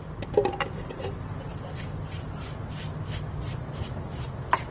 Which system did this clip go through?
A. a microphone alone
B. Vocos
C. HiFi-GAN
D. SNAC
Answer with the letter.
A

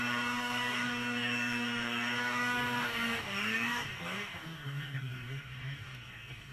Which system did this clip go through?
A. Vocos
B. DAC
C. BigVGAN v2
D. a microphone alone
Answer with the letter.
B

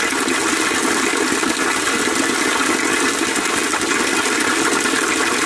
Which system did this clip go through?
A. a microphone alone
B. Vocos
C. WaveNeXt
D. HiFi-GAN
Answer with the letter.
A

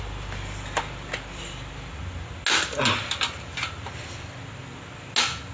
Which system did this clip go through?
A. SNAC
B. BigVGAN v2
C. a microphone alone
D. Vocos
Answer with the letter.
C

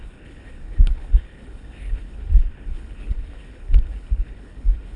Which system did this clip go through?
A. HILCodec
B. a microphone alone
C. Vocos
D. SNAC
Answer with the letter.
A